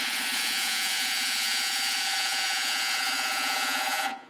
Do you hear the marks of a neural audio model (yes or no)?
yes